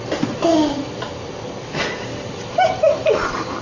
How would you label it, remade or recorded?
remade